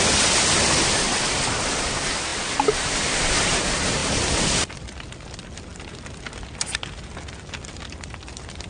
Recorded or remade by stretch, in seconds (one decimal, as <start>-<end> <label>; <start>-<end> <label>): 0.0-8.7 recorded